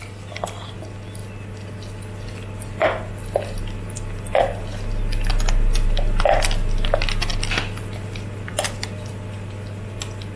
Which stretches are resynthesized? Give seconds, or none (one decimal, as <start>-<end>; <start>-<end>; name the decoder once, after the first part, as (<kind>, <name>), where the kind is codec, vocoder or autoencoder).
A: none